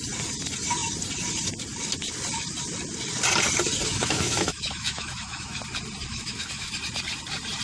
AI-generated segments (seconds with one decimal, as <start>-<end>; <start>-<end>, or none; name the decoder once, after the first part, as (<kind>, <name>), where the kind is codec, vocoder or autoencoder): 3.9-5.6 (autoencoder, DAC-VAE); 6.1-6.7